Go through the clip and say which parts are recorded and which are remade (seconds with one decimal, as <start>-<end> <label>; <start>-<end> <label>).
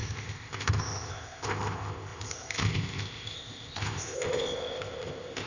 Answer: 0.0-5.5 remade